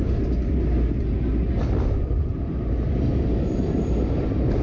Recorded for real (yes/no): yes